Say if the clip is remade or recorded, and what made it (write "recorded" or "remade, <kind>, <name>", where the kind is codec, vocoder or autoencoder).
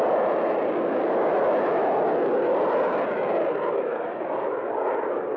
recorded